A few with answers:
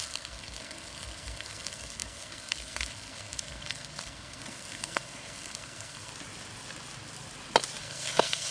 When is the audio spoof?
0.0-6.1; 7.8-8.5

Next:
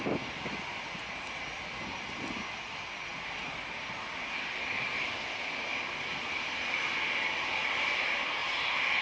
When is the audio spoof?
3.1-5.1